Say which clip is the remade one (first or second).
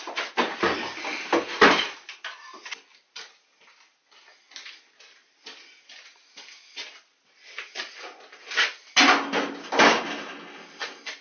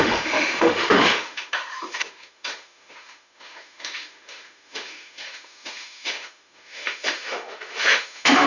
second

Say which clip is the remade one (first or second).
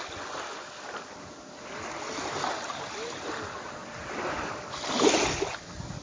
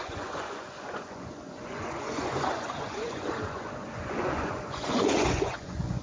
second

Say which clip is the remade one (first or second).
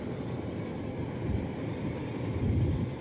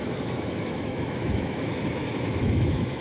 second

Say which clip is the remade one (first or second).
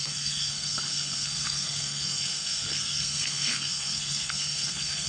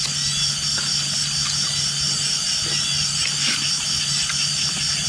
first